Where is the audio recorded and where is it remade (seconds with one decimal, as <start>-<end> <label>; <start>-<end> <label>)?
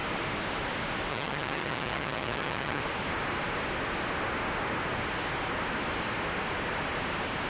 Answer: 0.0-1.1 recorded; 1.1-2.8 remade; 2.8-7.5 recorded